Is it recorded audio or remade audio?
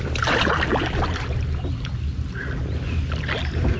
recorded